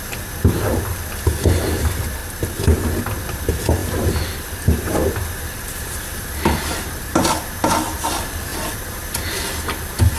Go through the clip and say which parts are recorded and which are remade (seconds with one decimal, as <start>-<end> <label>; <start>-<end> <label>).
0.0-2.2 remade; 2.2-3.2 recorded; 3.2-8.5 remade; 8.5-9.3 recorded; 9.3-10.2 remade